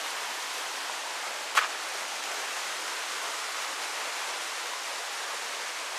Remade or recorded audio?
recorded